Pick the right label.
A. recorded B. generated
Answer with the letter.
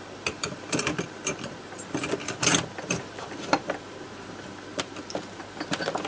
B